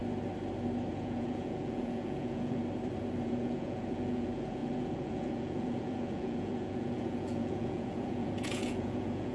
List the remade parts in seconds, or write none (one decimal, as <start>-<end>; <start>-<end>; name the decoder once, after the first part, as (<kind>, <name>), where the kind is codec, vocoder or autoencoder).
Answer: 0.9-2.6 (vocoder, Vocos); 3.2-9.3